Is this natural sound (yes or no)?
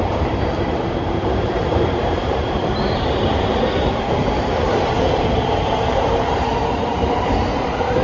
no